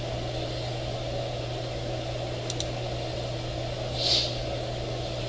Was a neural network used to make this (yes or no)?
no